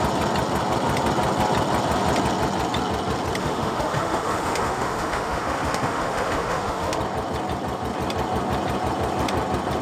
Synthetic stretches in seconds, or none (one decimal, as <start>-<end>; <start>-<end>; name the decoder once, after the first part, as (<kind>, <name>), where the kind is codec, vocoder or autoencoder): 3.4-7.0 (autoencoder, DAC-VAE)